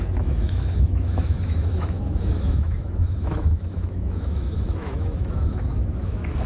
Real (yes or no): no